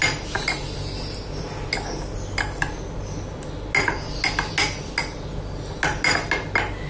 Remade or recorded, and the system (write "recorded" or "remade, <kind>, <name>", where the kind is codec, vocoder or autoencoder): recorded